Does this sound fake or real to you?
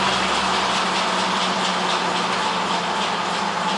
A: real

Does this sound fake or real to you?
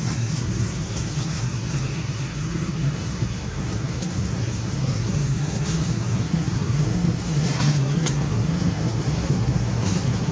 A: fake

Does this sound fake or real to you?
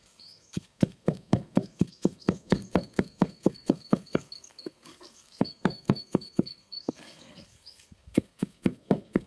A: fake